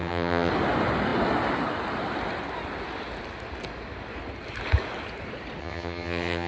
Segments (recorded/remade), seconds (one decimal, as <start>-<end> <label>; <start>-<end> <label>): 0.0-0.5 remade; 0.5-5.6 recorded; 5.6-6.5 remade

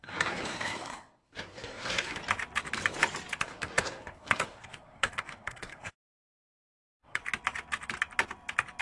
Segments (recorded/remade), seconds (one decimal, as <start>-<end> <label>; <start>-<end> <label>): 0.0-2.2 remade; 2.2-3.4 recorded; 3.4-7.2 remade; 7.2-8.8 recorded

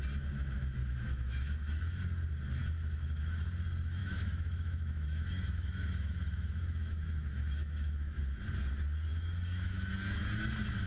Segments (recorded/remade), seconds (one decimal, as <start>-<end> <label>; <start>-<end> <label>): 0.0-0.8 recorded; 0.8-2.0 remade; 2.0-2.6 recorded; 2.6-3.4 remade; 3.4-4.0 recorded; 4.0-8.2 remade; 8.2-9.1 recorded; 9.1-9.9 remade; 9.9-10.9 recorded

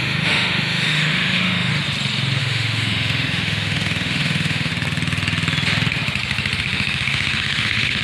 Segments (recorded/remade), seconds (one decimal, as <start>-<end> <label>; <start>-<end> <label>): 0.0-1.7 remade; 1.7-2.4 recorded; 2.4-4.7 remade; 4.7-6.6 recorded; 6.6-8.0 remade

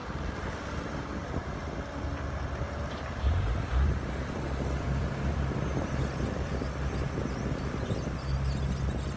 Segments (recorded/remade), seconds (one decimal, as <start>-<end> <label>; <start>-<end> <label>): 0.0-0.7 recorded; 0.7-1.4 remade; 1.4-2.7 recorded; 2.7-9.2 remade

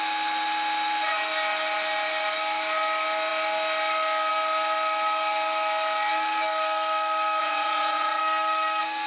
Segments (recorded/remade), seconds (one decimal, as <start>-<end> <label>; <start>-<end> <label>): 0.0-7.4 recorded; 7.4-8.2 remade; 8.2-9.1 recorded

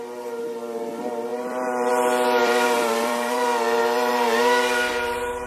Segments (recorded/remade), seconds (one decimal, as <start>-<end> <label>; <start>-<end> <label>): 0.0-1.3 recorded; 1.3-1.9 remade; 1.9-2.4 recorded; 2.4-4.1 remade; 4.1-5.5 recorded

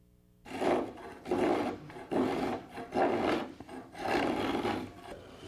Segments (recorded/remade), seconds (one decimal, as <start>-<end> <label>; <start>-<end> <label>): 0.0-1.5 recorded; 1.5-4.8 remade; 4.8-5.5 recorded